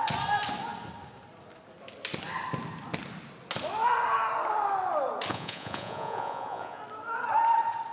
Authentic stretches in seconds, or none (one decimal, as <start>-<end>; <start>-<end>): 0.0-5.3; 6.8-7.9